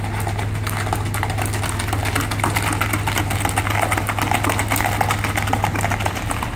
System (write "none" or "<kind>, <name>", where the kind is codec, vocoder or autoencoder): none